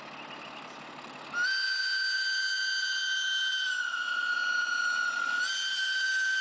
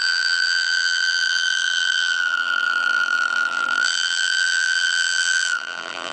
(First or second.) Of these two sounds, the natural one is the first